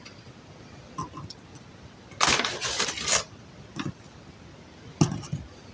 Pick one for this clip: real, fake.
real